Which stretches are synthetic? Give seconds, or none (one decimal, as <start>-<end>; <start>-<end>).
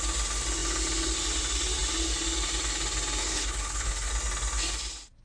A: 3.2-4.1